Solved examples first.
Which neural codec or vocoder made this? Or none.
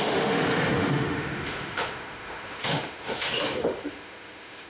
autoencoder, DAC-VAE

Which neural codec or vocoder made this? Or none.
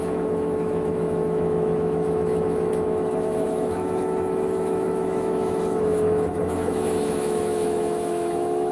autoencoder, DAC-VAE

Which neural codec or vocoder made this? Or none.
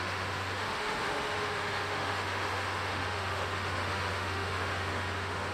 autoencoder, DAC-VAE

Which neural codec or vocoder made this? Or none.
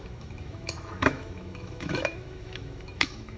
autoencoder, DAC-VAE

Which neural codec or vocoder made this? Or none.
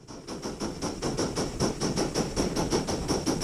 none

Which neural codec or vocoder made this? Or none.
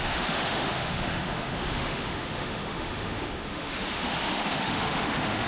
autoencoder, DAC-VAE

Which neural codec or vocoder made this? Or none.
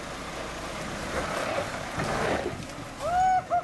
none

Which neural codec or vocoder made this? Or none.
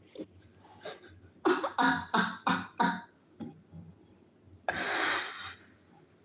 none